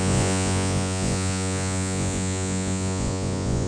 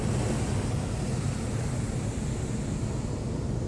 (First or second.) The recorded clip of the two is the second